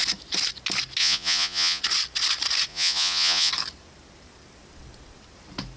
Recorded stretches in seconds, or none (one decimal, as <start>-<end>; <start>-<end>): 0.0-1.0; 1.8-2.7; 3.5-5.8